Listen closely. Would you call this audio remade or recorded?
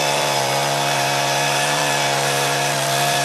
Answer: remade